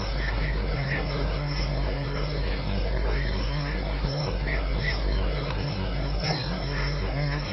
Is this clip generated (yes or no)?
yes